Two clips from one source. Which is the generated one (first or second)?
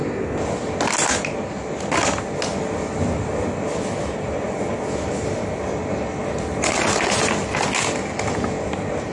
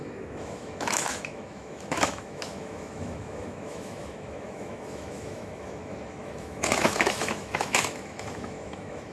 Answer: second